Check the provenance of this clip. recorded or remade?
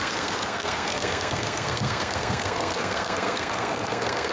remade